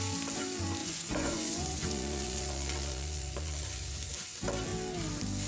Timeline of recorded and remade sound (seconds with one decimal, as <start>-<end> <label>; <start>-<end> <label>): 0.0-0.8 recorded; 0.8-4.1 remade; 4.1-5.5 recorded